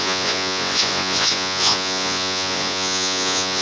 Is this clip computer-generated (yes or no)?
yes